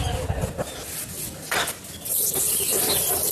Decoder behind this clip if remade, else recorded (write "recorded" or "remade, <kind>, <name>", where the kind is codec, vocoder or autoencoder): recorded